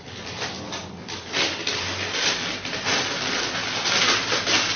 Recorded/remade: recorded